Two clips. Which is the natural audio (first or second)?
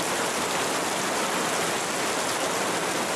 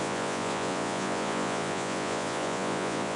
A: first